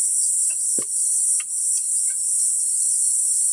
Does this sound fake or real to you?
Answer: real